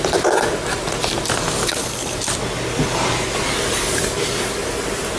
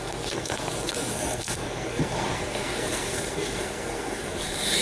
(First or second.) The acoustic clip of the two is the first